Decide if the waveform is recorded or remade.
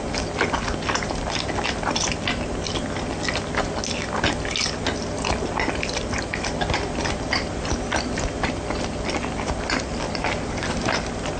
recorded